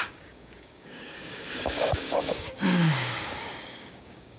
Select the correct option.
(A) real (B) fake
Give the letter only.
B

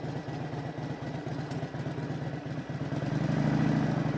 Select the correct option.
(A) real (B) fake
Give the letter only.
A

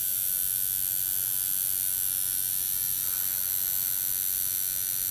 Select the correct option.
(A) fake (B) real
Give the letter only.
B